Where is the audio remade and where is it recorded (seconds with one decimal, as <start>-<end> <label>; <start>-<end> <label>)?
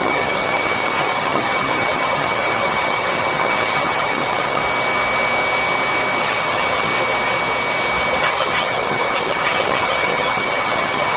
0.0-4.6 remade; 4.6-6.2 recorded; 6.2-6.9 remade; 6.9-8.2 recorded; 8.2-11.2 remade